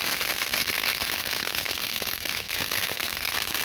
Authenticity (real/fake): fake